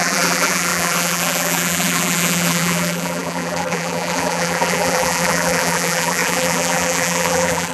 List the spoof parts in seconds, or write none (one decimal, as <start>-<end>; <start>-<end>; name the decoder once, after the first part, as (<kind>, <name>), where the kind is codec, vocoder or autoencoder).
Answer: 0.0-7.7 (vocoder, BigVGAN v2)